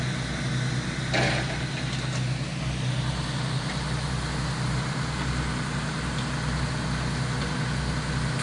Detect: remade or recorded recorded